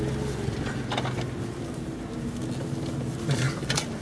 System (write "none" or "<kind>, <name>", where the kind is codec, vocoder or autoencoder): none